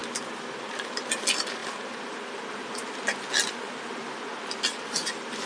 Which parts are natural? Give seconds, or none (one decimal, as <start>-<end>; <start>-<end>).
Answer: 0.0-5.5